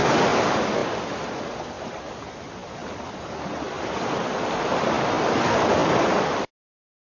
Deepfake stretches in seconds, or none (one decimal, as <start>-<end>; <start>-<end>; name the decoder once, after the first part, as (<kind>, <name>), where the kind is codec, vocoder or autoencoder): none